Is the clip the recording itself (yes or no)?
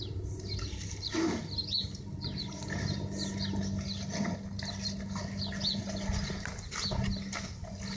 yes